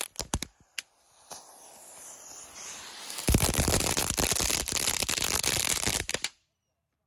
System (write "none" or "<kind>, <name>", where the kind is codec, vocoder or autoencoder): vocoder, BigVGAN v2